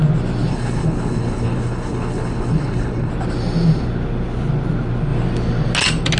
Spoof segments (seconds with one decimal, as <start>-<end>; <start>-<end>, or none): 0.5-3.1